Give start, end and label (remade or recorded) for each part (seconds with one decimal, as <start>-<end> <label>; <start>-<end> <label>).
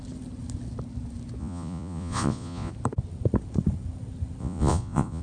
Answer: 0.0-1.4 recorded; 1.4-2.7 remade; 2.7-4.4 recorded; 4.4-5.2 remade